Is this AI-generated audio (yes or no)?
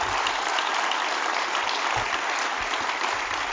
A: no